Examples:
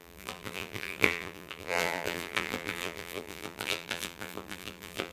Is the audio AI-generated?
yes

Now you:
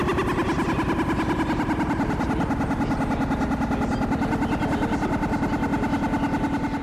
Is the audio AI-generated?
no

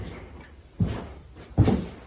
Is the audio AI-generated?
yes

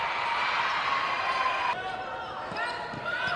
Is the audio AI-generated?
no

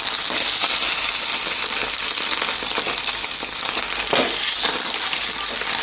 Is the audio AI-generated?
no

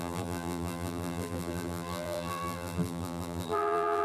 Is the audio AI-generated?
yes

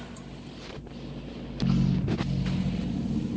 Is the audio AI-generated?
no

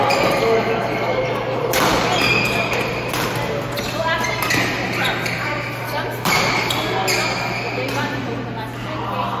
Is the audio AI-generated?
no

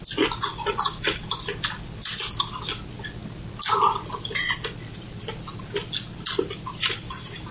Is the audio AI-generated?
no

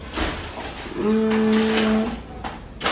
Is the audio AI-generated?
no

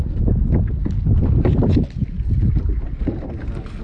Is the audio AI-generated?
no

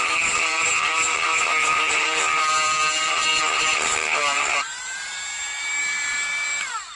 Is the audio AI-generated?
yes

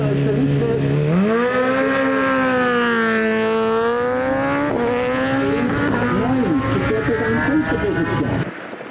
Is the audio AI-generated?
no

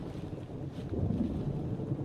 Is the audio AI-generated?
no